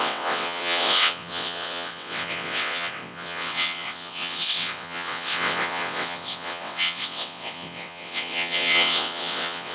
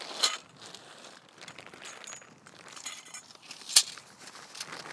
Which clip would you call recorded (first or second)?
second